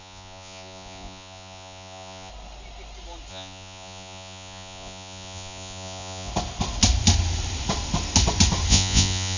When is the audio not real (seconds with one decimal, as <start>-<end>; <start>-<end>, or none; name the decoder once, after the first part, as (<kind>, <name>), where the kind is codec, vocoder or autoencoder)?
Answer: 0.0-2.3 (vocoder, Vocos); 3.3-6.3; 8.7-9.4